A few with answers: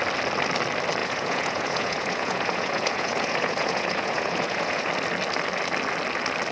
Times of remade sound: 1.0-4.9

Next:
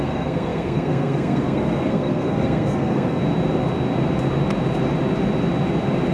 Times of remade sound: 0.0-3.2

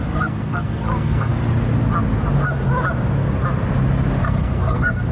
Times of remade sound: 0.0-1.3; 4.2-5.1

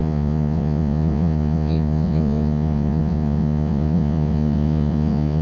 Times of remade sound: 0.0-5.4

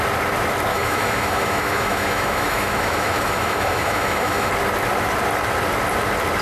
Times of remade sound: 0.7-4.5

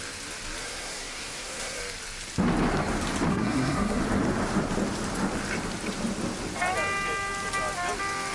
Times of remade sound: 0.6-1.8; 3.3-4.0